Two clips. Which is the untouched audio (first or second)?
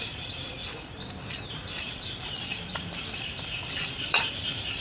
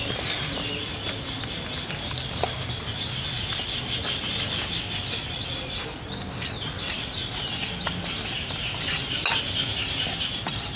second